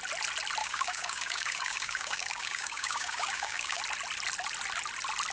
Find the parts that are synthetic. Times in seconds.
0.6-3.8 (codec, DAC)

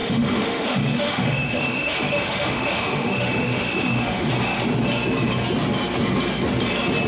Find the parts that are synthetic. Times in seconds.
0.0-4.3 (autoencoder, DAC-VAE)

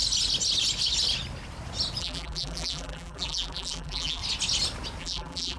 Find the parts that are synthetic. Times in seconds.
2.0-4.2 (vocoder, BigVGAN v2); 5.0-5.6

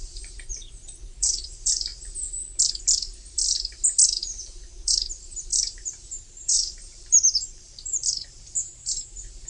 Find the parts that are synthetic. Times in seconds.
0.0-1.9 (vocoder, BigVGAN v2); 4.4-9.5

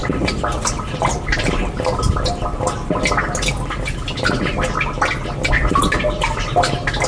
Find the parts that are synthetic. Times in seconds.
none

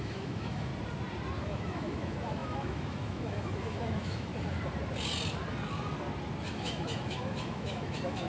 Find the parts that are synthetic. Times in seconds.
0.0-0.7 (autoencoder, DAC-VAE); 1.4-4.3; 6.5-8.3

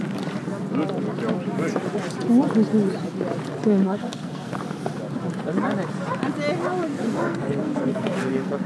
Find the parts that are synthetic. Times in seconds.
3.8-4.6 (codec, SNAC); 6.9-8.7

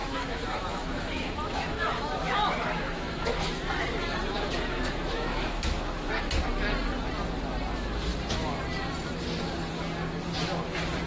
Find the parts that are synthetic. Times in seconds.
0.0-3.5 (autoencoder, DAC-VAE); 4.3-6.3